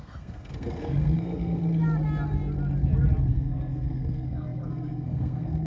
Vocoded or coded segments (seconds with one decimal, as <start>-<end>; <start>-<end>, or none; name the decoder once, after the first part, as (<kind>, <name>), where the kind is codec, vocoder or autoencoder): 0.0-1.6 (codec, SNAC); 3.3-5.7